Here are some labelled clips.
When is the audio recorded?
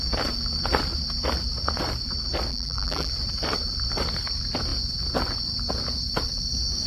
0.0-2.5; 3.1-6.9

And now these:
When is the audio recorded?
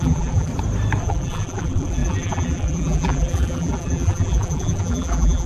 0.5-1.0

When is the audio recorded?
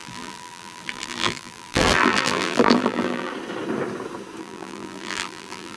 3.3-4.4